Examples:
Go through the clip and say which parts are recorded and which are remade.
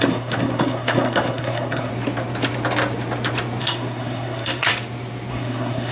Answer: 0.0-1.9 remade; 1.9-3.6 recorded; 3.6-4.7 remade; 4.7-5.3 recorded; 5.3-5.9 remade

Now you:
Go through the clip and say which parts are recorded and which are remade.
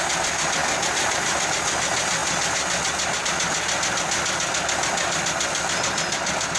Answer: 0.0-6.6 recorded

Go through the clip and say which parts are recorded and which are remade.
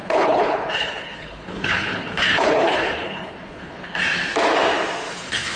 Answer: 0.0-4.0 remade; 4.0-5.1 recorded; 5.1-5.6 remade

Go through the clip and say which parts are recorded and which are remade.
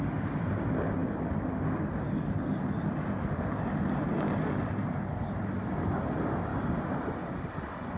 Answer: 0.0-6.5 remade; 6.5-7.4 recorded; 7.4-8.0 remade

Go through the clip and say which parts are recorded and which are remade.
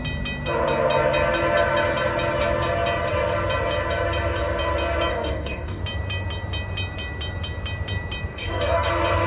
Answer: 0.0-5.1 recorded; 5.1-5.8 remade; 5.8-8.3 recorded; 8.3-8.9 remade; 8.9-9.3 recorded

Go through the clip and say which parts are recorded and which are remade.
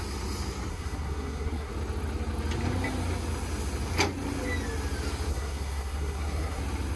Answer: 0.0-0.7 recorded; 0.7-1.7 remade; 1.7-5.3 recorded; 5.3-6.6 remade; 6.6-7.0 recorded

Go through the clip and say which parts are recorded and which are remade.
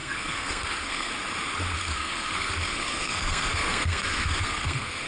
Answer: 0.0-1.1 remade; 1.1-1.8 recorded; 1.8-5.1 remade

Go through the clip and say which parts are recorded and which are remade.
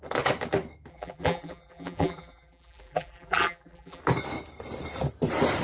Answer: 0.0-0.9 recorded; 0.9-4.0 remade; 4.0-5.6 recorded